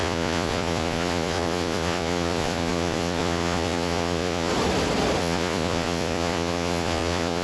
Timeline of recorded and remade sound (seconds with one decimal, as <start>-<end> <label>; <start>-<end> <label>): 0.0-4.5 remade; 4.5-5.2 recorded; 5.2-7.4 remade